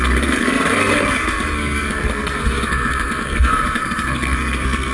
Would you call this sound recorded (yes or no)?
no